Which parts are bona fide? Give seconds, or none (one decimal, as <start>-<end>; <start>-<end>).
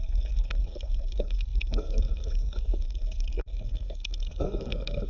none